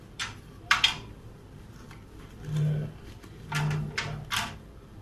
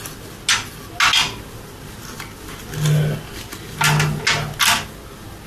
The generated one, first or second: first